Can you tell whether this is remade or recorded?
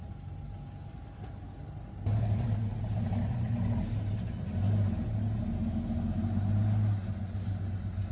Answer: recorded